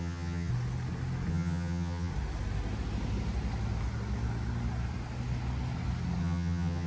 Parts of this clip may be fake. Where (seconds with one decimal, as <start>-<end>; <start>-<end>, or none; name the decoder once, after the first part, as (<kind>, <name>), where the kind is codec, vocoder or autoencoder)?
0.0-0.5 (vocoder, HiFi-GAN); 1.3-2.1; 6.2-6.9